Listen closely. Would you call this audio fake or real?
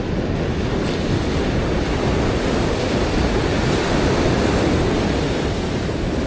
real